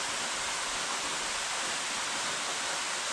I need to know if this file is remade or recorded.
recorded